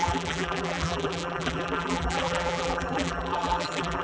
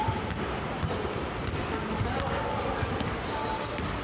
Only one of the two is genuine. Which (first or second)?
second